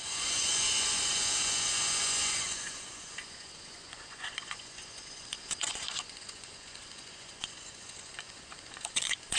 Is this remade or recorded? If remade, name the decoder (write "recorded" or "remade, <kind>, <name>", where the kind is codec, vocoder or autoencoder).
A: remade, vocoder, Vocos